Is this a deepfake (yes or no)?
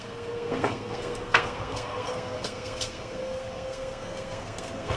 yes